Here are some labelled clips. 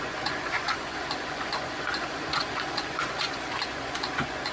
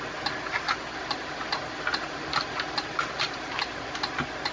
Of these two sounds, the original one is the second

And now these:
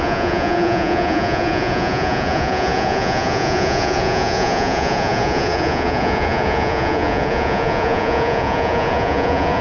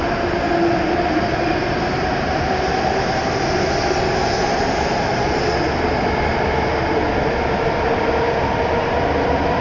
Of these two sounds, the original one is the second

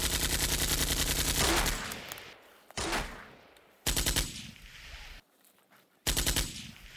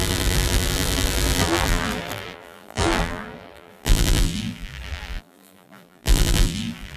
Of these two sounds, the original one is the first